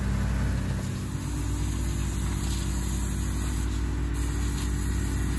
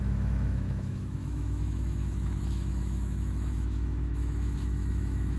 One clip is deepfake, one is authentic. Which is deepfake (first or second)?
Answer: second